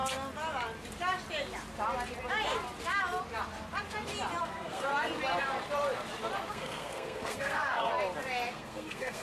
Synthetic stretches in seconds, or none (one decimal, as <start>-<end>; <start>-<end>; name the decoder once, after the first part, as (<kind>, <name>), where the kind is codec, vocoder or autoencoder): 4.4-4.9 (codec, SNAC); 6.5-7.9; 8.5-9.2